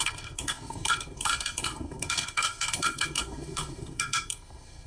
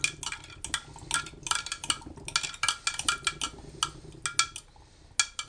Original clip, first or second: second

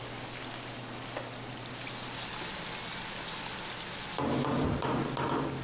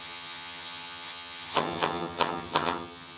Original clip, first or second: first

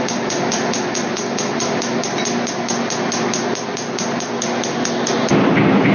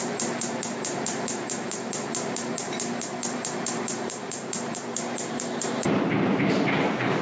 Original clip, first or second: first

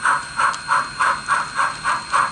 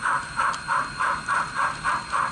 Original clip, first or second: first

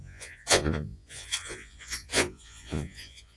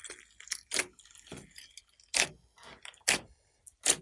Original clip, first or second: second